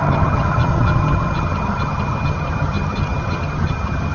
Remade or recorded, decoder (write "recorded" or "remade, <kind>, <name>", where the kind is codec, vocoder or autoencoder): remade, vocoder, HiFi-GAN